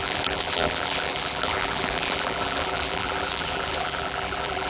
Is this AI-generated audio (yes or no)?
yes